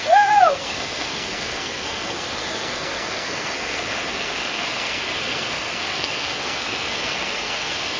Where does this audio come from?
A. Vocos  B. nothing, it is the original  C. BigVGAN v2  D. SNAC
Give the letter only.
D